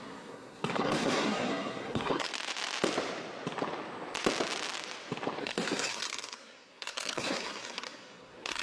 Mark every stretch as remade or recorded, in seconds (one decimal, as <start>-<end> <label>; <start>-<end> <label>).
0.0-2.3 remade; 2.3-5.4 recorded; 5.4-8.6 remade